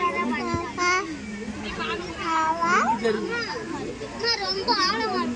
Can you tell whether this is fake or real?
real